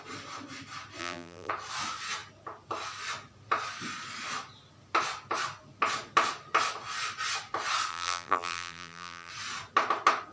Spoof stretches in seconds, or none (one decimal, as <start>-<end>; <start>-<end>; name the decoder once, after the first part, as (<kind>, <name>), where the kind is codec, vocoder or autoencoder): 1.0-1.5 (vocoder, BigVGAN v2); 7.9-9.3